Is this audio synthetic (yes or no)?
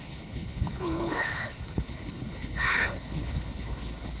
yes